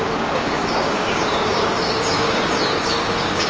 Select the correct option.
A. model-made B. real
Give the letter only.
A